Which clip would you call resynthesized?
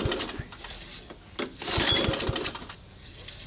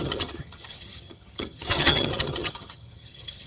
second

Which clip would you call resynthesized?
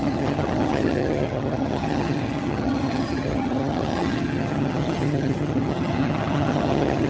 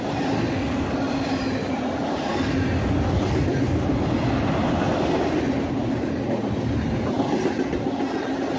first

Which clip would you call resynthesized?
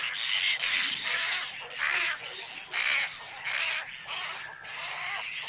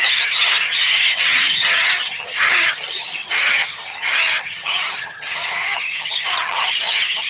second